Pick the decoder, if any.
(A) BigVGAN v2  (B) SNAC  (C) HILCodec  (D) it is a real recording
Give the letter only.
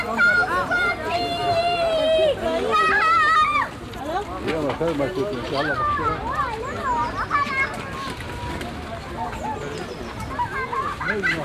D